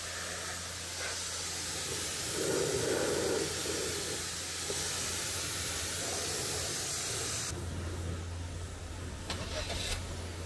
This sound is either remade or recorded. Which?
recorded